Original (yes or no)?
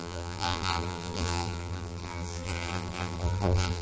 no